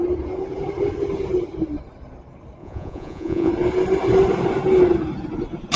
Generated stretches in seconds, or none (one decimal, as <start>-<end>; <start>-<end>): 2.6-3.5